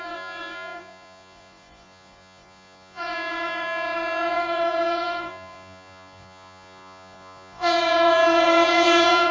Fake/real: fake